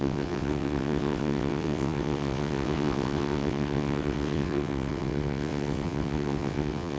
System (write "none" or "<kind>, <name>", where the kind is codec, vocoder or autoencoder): vocoder, WaveNeXt